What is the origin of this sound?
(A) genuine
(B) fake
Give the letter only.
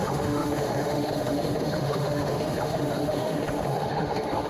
B